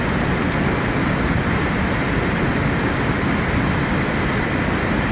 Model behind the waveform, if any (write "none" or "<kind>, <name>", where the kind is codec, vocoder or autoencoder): none